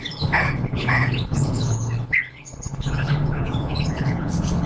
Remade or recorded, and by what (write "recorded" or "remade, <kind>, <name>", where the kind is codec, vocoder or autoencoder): remade, codec, HILCodec